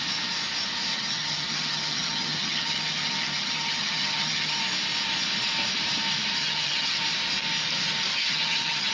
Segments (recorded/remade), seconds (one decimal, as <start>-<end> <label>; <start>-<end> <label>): 0.0-0.9 recorded; 0.9-4.6 remade; 4.6-6.4 recorded; 6.4-7.0 remade; 7.0-8.1 recorded; 8.1-8.9 remade